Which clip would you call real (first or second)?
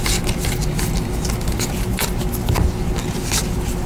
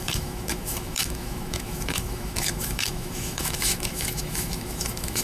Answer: first